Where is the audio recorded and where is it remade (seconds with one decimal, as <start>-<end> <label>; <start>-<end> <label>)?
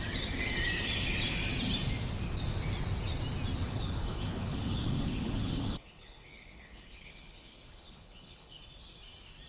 0.0-3.6 recorded; 3.6-8.6 remade; 8.6-9.5 recorded